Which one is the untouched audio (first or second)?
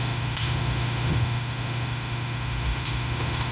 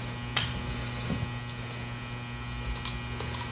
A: second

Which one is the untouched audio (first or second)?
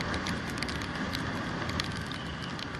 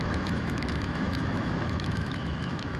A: first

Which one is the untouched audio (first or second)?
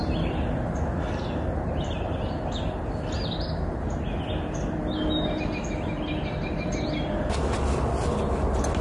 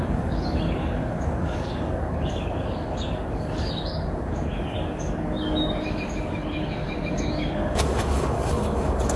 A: first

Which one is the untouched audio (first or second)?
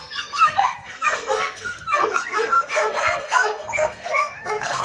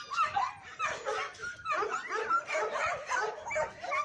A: second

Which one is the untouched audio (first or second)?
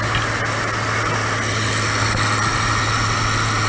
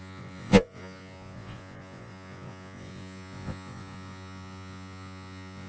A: first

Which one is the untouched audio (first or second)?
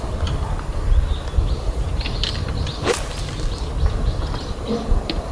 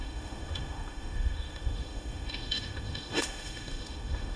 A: first